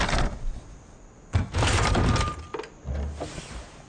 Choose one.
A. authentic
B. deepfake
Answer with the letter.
A